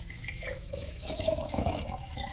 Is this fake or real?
fake